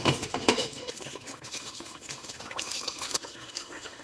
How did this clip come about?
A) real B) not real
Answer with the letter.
B